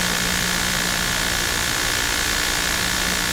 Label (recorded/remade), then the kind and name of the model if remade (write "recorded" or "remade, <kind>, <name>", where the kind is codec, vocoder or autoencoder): recorded